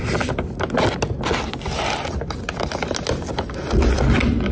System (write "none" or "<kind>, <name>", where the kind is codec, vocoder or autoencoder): none